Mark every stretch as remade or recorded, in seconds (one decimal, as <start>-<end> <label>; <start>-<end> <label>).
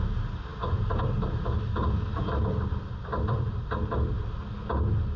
0.0-5.2 recorded